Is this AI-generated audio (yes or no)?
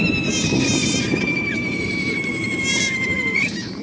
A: yes